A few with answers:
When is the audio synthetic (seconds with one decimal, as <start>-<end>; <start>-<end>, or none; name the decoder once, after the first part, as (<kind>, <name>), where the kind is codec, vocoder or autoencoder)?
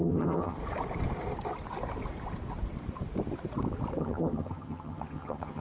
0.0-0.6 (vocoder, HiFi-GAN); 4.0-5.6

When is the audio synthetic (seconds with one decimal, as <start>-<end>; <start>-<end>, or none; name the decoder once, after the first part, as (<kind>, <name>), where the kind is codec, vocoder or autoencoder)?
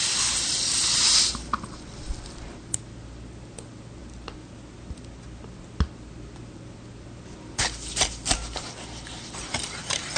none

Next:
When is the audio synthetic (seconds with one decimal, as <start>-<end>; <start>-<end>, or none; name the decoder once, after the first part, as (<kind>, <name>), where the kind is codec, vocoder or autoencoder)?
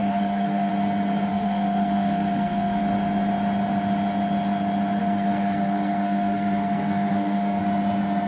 0.0-0.7 (codec, SNAC); 1.3-2.8; 5.0-7.6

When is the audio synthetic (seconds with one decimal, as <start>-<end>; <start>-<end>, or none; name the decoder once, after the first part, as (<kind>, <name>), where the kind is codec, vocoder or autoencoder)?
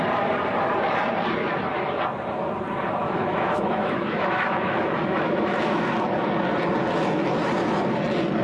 3.0-5.8 (autoencoder, DAC-VAE)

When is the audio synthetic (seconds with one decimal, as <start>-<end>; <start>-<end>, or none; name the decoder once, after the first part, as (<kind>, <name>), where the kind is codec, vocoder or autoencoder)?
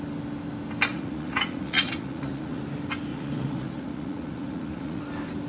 0.9-2.6 (vocoder, Vocos); 3.1-5.0